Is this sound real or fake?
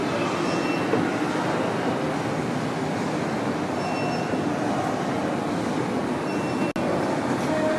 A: real